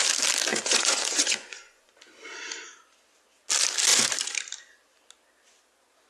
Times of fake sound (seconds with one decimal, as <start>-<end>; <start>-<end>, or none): 0.5-1.9